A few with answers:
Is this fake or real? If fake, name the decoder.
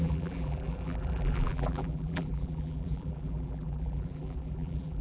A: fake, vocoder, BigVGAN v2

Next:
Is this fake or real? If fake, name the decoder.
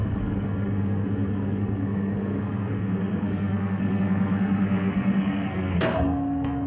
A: fake, codec, SNAC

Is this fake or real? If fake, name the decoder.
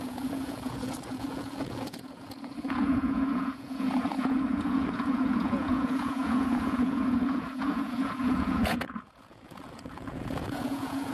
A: fake, vocoder, Vocos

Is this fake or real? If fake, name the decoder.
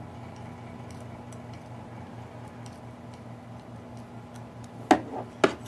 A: real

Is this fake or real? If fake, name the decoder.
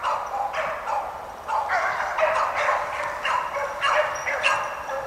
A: real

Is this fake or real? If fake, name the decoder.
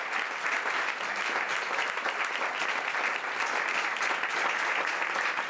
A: real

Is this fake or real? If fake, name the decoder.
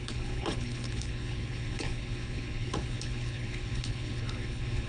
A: fake, codec, HILCodec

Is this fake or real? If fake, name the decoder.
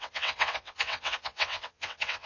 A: fake, vocoder, WaveNeXt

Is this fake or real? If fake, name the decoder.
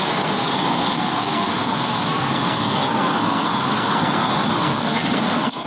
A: fake, codec, SNAC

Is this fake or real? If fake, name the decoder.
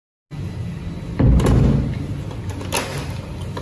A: real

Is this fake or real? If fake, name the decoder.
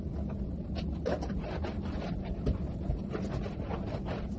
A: real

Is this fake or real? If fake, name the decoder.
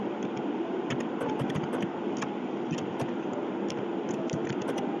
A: real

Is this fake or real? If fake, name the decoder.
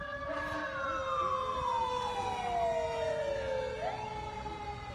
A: real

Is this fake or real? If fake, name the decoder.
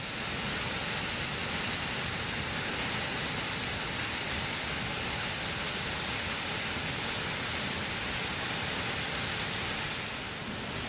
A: real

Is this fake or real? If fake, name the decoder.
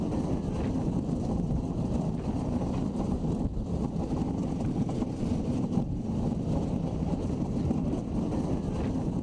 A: real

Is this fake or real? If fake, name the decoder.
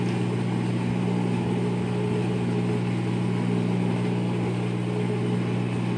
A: real